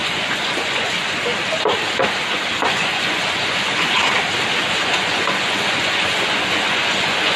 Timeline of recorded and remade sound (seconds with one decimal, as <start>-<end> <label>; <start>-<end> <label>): 0.0-1.3 remade; 1.3-2.7 recorded; 2.7-4.0 remade; 4.0-4.7 recorded; 4.7-7.4 remade